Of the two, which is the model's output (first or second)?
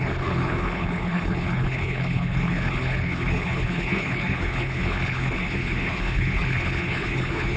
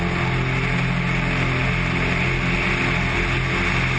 first